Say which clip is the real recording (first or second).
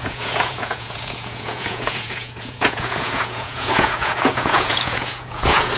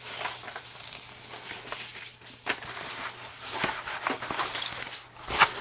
second